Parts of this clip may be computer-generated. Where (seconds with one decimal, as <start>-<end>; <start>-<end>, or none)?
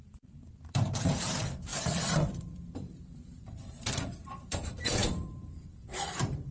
0.0-6.5